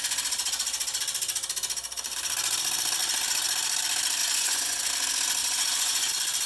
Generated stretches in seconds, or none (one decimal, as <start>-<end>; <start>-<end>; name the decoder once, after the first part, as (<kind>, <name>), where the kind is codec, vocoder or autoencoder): 4.2-4.9 (vocoder, Vocos); 5.4-6.1